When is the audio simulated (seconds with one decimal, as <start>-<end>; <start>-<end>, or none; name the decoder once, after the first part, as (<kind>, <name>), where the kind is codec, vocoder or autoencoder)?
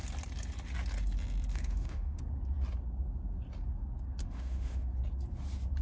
1.5-2.2 (autoencoder, DAC-VAE); 4.2-4.9